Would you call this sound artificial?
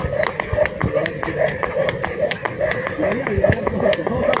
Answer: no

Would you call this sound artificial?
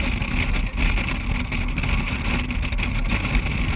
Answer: no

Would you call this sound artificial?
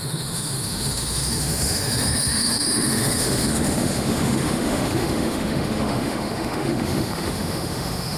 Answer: yes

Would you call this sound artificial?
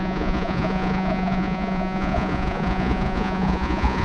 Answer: yes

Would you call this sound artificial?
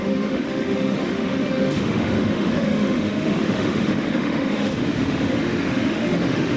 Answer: yes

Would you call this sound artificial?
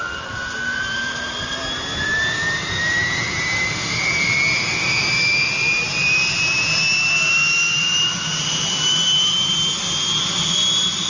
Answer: yes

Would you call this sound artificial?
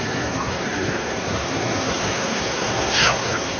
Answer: yes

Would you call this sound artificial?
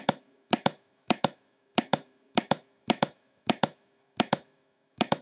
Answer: yes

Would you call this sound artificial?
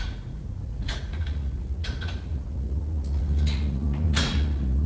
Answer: yes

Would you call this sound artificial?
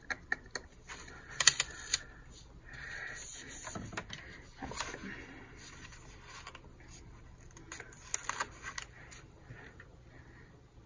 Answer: no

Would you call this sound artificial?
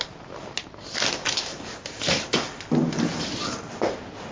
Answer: no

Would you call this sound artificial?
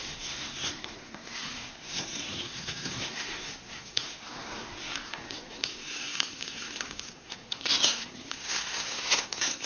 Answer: yes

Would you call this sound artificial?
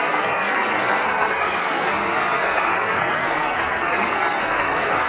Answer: yes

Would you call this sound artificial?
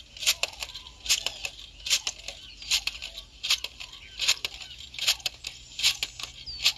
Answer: no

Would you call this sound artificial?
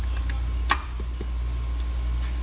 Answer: no